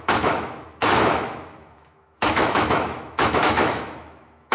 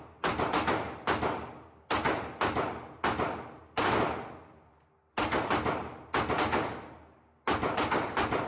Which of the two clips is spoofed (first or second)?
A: first